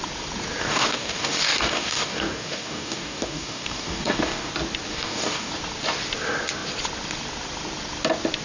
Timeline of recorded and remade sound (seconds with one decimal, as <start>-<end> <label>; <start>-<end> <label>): 0.0-0.6 recorded; 0.6-4.5 remade; 4.5-4.9 recorded; 4.9-5.5 remade; 5.5-8.4 recorded